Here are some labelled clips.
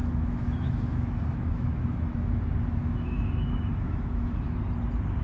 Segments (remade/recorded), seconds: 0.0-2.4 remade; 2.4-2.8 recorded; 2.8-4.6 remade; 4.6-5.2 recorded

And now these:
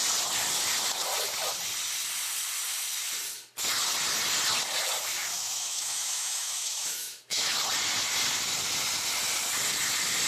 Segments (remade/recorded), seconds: 0.0-5.2 recorded; 5.2-7.6 remade; 7.6-10.3 recorded

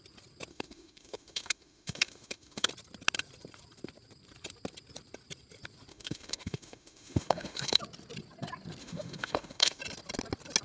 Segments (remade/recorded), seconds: 0.0-0.5 recorded; 0.5-2.7 remade; 2.7-5.9 recorded; 5.9-7.8 remade; 7.8-8.8 recorded; 8.8-9.8 remade; 9.8-10.6 recorded

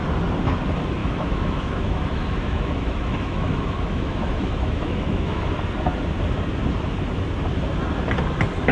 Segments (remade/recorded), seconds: 0.0-1.0 recorded; 1.0-5.5 remade; 5.5-8.7 recorded

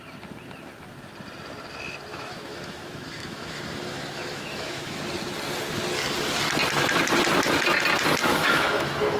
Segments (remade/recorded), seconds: 0.0-2.1 recorded; 2.1-5.0 remade; 5.0-8.2 recorded; 8.2-9.2 remade